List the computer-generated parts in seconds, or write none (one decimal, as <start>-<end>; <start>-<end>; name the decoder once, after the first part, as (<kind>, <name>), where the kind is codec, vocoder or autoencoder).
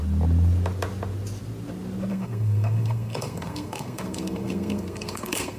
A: 2.1-5.6 (codec, SNAC)